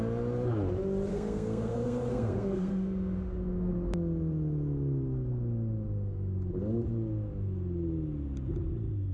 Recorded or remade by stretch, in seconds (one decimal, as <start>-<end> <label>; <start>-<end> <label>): 0.0-1.1 recorded; 1.1-3.7 remade; 3.7-9.1 recorded